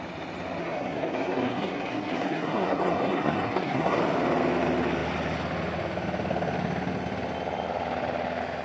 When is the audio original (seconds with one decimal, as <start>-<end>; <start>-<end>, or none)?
0.0-0.6; 4.0-8.6